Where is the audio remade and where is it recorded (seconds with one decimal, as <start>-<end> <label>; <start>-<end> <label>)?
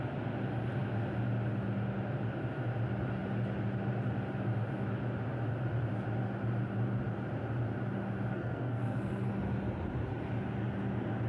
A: 0.0-8.3 recorded; 8.3-9.3 remade; 9.3-11.3 recorded